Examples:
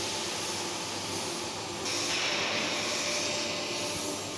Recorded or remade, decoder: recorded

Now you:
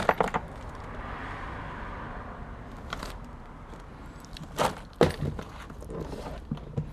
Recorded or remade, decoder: recorded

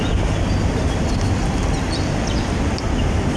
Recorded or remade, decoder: recorded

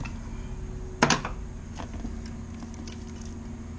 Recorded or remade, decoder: recorded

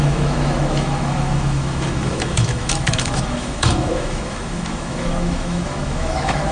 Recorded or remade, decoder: remade, autoencoder, DAC-VAE